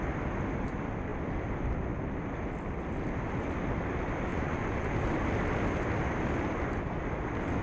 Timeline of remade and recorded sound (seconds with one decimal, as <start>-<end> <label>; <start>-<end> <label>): 0.0-4.3 recorded; 4.3-4.9 remade; 4.9-7.6 recorded